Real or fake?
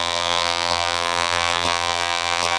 fake